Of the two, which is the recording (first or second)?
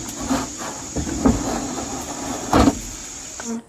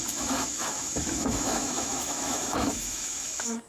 first